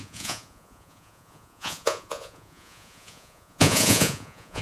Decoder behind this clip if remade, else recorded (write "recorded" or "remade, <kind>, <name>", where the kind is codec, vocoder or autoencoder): remade, vocoder, Vocos